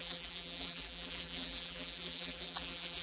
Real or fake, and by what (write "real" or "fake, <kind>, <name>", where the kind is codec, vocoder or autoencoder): fake, vocoder, BigVGAN v2